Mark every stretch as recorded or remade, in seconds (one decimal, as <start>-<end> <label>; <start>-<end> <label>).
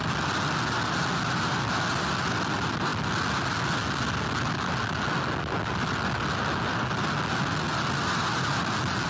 0.0-9.1 recorded